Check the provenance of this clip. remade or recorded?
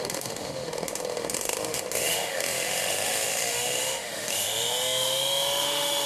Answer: remade